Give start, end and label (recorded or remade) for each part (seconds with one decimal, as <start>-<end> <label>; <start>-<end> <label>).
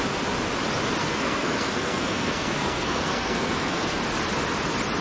0.0-1.0 recorded; 1.0-4.0 remade; 4.0-5.0 recorded